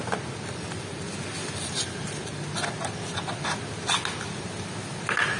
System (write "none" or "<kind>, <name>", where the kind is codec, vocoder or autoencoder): none